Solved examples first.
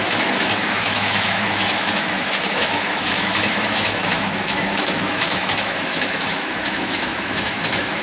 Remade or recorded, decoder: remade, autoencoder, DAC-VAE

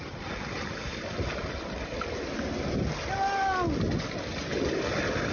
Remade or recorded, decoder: recorded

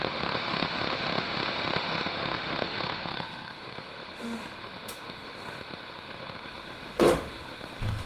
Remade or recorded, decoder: remade, autoencoder, DAC-VAE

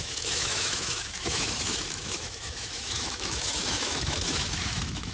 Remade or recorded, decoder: remade, autoencoder, DAC-VAE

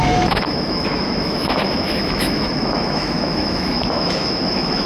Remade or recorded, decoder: remade, autoencoder, DAC-VAE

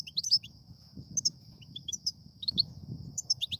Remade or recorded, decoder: remade, autoencoder, DAC-VAE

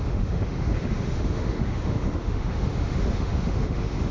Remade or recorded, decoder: remade, autoencoder, DAC-VAE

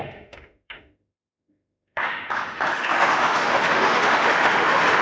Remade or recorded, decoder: remade, autoencoder, DAC-VAE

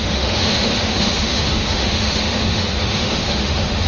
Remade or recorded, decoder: remade, autoencoder, DAC-VAE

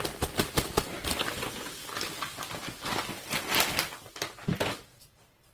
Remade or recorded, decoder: recorded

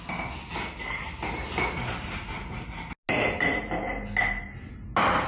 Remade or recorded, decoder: recorded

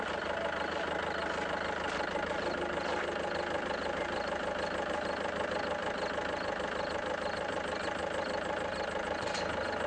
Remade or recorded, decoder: recorded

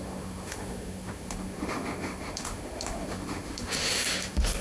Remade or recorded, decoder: remade, autoencoder, DAC-VAE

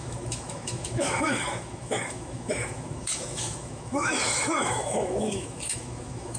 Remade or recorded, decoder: remade, autoencoder, DAC-VAE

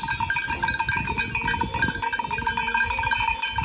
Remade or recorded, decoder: recorded